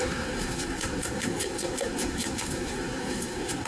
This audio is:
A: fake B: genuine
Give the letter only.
A